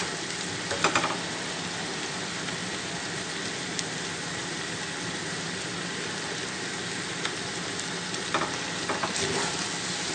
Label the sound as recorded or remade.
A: recorded